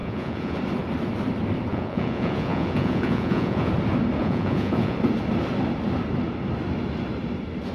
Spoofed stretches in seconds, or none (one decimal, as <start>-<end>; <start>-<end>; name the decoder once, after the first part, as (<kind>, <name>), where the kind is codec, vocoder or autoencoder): 0.0-0.6 (vocoder, Vocos); 1.7-3.7; 4.2-5.0

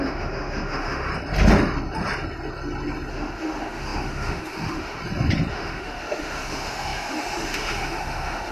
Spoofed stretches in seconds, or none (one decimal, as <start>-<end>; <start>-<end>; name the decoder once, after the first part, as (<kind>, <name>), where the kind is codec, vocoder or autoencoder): 0.0-1.1 (autoencoder, DAC-VAE); 3.1-5.0; 5.5-8.5

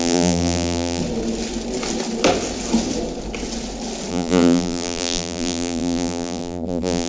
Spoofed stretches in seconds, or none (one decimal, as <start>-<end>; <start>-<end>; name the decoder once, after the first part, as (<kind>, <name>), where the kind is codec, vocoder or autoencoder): 0.0-1.0 (vocoder, BigVGAN v2); 4.1-7.1